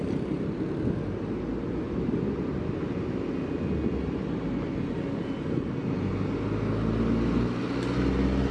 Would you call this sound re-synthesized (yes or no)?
no